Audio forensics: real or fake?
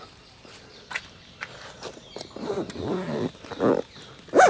real